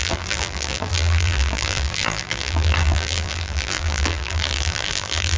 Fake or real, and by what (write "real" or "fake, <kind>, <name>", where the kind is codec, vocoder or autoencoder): fake, vocoder, BigVGAN v2